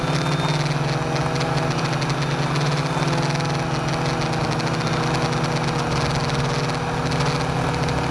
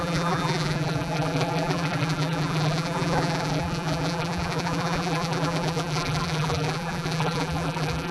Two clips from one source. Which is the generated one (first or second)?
second